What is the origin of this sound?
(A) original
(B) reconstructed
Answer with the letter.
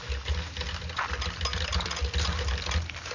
A